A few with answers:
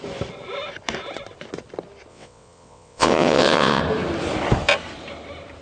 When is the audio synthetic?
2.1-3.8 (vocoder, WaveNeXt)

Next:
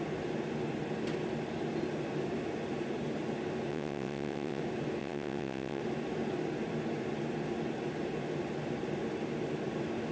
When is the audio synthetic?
3.7-4.6 (vocoder, WaveNeXt); 5.0-5.8

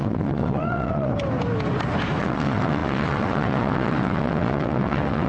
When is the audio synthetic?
0.0-1.1 (vocoder, WaveNeXt); 2.2-5.3

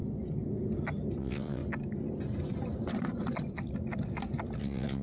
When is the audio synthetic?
1.2-1.6 (vocoder, WaveNeXt); 4.6-5.0

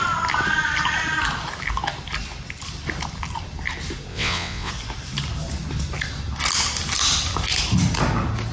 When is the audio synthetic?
4.1-4.7 (vocoder, WaveNeXt)